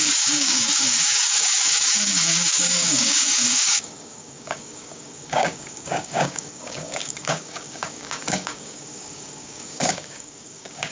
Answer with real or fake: fake